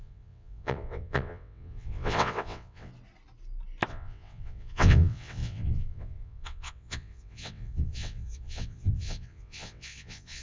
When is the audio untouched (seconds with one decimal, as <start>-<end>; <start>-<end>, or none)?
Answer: 2.9-3.9